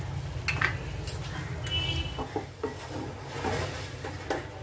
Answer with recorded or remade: recorded